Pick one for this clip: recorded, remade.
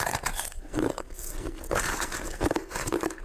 remade